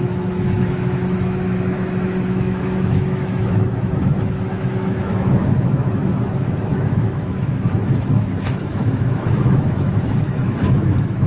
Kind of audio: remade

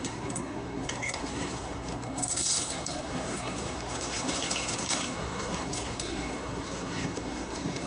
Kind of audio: remade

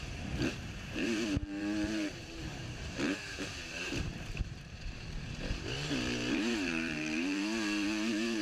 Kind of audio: remade